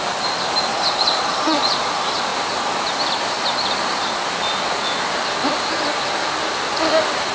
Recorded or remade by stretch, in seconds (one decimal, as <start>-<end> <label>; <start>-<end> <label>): 0.0-0.7 recorded; 0.7-1.9 remade; 1.9-7.3 recorded